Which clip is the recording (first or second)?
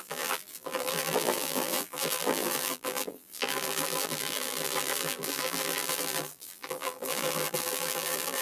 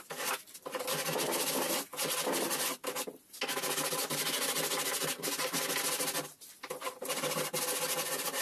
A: second